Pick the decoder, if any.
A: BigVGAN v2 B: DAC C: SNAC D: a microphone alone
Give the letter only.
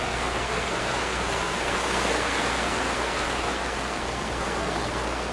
C